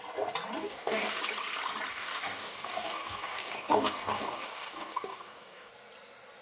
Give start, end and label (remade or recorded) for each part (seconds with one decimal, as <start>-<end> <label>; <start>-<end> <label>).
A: 0.0-0.6 recorded; 0.6-1.2 remade; 1.2-1.9 recorded; 1.9-5.7 remade; 5.7-6.4 recorded